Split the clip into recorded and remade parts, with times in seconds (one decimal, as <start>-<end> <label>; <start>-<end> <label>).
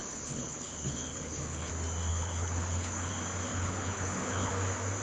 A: 0.0-1.7 remade; 1.7-2.1 recorded; 2.1-3.1 remade; 3.1-3.5 recorded; 3.5-4.5 remade; 4.5-5.0 recorded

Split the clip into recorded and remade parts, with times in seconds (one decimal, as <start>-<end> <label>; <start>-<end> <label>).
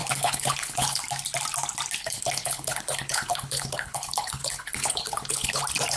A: 0.0-1.0 remade; 1.0-2.0 recorded; 2.0-5.6 remade; 5.6-6.0 recorded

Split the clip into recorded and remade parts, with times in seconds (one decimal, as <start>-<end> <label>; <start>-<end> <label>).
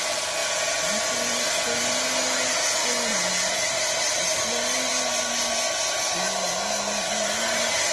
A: 0.0-7.9 recorded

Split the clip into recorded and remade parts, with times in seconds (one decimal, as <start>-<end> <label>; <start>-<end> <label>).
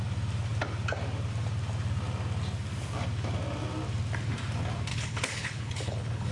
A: 0.0-4.9 recorded; 4.9-6.3 remade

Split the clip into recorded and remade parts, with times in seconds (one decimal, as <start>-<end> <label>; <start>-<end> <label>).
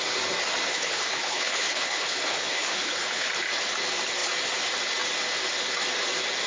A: 0.0-0.7 recorded; 0.7-3.3 remade; 3.3-6.5 recorded